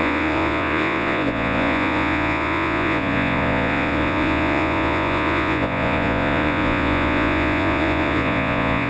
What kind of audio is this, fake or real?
fake